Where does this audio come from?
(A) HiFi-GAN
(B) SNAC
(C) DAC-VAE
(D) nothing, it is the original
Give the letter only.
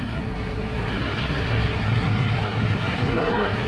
B